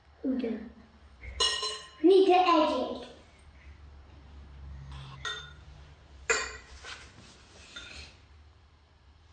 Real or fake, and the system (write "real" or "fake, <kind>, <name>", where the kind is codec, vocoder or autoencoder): real